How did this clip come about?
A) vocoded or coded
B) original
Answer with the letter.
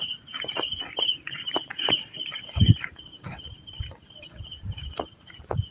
A